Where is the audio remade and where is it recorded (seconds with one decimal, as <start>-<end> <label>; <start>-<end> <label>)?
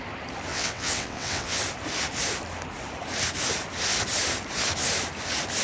0.0-0.5 recorded; 0.5-1.6 remade; 1.6-5.6 recorded